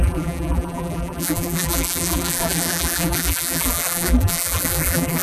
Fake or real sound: fake